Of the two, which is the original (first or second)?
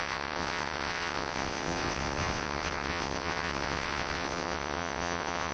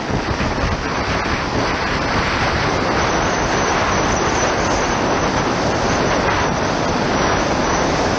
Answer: second